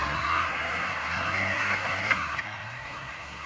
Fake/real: fake